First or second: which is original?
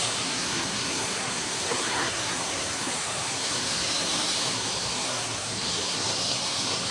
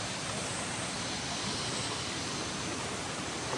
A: second